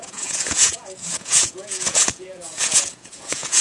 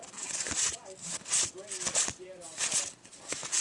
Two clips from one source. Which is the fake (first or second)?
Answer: first